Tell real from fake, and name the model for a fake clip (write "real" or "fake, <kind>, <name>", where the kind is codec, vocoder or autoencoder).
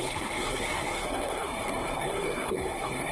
fake, codec, SNAC